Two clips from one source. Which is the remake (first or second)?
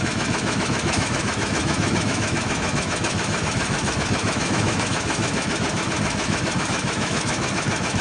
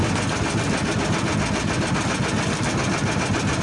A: first